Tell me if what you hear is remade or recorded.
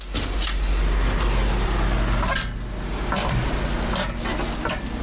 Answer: recorded